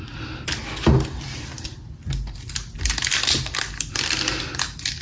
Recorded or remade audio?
recorded